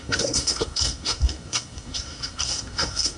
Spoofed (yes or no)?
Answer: yes